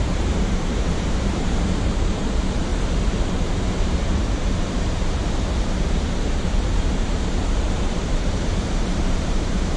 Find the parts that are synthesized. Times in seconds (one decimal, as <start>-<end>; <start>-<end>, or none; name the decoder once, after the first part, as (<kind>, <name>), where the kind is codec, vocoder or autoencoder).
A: 0.0-2.7 (vocoder, BigVGAN v2); 3.5-9.8